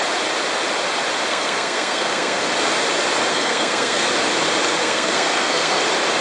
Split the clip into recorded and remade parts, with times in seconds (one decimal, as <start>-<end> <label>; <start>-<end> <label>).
0.0-1.3 recorded; 1.3-2.4 remade; 2.4-3.3 recorded; 3.3-4.1 remade; 4.1-4.8 recorded; 4.8-5.8 remade; 5.8-6.2 recorded